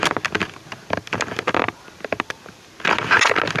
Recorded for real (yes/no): yes